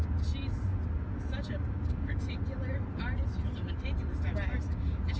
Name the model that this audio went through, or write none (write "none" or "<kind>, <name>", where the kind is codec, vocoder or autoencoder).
none